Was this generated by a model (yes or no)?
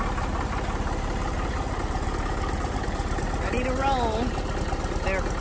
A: no